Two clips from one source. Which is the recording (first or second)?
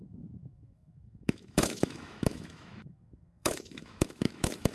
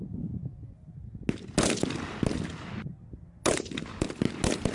second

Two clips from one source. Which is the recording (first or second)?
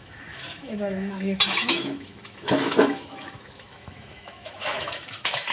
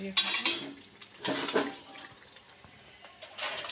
second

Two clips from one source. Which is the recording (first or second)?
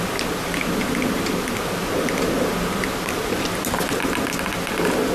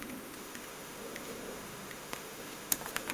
first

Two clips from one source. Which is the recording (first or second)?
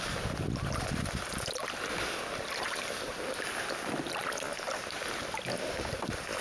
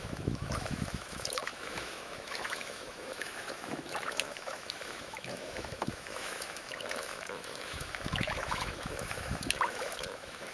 first